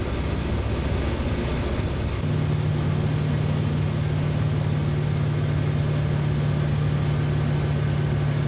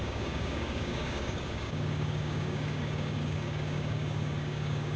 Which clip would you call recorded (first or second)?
first